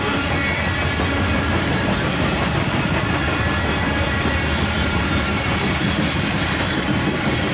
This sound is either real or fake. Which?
real